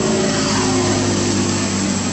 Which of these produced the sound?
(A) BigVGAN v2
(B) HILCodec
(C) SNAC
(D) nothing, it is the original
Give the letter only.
D